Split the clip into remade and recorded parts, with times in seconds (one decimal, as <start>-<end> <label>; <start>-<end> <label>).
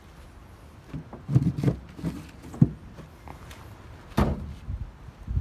0.0-5.4 recorded